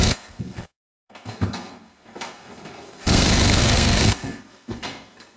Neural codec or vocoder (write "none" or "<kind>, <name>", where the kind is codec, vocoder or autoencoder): codec, SNAC